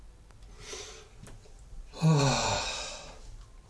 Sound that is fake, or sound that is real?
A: real